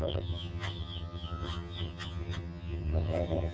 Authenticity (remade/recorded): remade